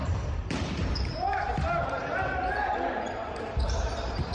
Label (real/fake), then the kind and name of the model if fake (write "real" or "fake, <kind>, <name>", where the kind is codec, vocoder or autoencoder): fake, vocoder, BigVGAN v2